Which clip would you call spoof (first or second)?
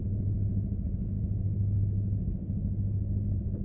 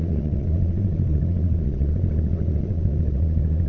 second